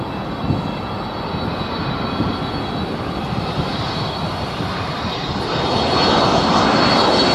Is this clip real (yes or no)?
yes